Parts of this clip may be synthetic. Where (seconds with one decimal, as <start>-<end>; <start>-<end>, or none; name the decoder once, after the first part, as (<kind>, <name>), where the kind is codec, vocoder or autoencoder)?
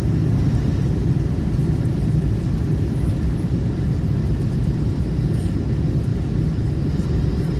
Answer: 6.1-7.6 (vocoder, BigVGAN v2)